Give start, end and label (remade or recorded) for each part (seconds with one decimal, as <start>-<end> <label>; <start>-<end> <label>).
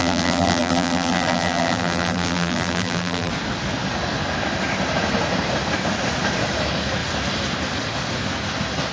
0.0-3.3 remade; 3.3-8.9 recorded